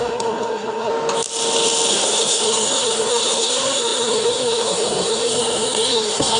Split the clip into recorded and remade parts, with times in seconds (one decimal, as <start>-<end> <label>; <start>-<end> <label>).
0.0-0.9 remade; 0.9-1.9 recorded; 1.9-6.4 remade

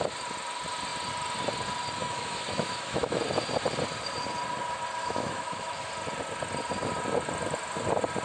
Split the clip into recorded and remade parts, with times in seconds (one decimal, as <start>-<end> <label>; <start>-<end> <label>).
0.0-2.0 recorded; 2.0-3.2 remade; 3.2-5.0 recorded; 5.0-5.9 remade; 5.9-8.2 recorded

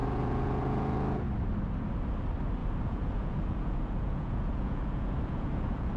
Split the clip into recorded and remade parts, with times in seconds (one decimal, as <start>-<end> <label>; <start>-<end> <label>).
0.0-1.3 remade; 1.3-2.6 recorded; 2.6-6.0 remade

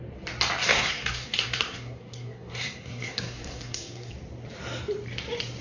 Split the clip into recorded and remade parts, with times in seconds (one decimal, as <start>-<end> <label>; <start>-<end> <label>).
0.0-0.7 recorded; 0.7-4.1 remade; 4.1-5.6 recorded

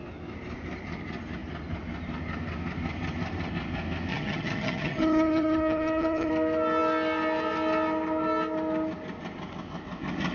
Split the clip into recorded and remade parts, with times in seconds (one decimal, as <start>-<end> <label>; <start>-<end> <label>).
0.0-4.1 recorded; 4.1-6.3 remade; 6.3-10.3 recorded